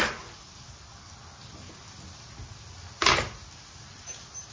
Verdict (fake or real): real